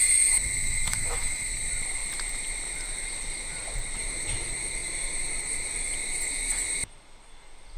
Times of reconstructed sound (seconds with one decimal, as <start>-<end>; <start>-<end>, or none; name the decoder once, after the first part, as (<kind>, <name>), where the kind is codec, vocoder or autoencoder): 0.6-1.5 (autoencoder, DAC-VAE)